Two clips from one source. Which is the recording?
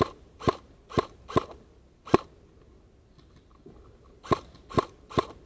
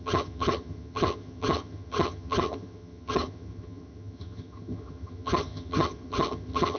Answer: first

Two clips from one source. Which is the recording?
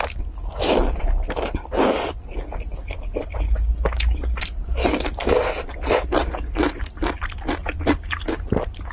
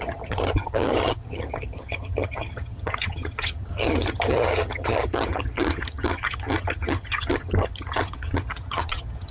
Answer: first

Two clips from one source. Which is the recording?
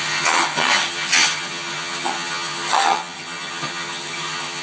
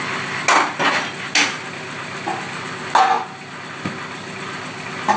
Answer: second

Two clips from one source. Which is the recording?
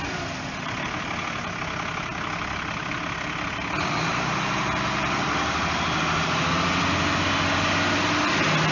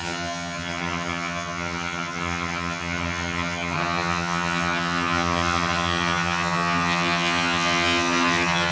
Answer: first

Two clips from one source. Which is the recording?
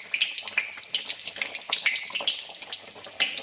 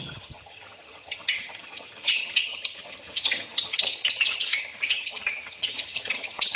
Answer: first